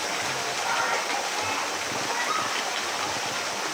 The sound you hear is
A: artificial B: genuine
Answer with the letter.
B